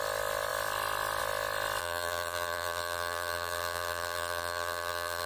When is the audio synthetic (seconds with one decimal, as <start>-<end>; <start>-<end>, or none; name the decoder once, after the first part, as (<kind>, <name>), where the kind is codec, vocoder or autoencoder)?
1.8-5.3 (vocoder, BigVGAN v2)